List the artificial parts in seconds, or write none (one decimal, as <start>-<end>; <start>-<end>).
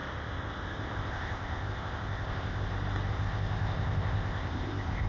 0.0-2.7; 3.1-5.1